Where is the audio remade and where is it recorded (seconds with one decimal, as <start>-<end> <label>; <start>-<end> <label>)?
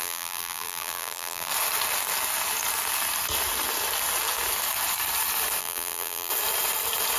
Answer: 0.0-1.5 remade; 1.5-5.6 recorded; 5.6-6.3 remade; 6.3-7.2 recorded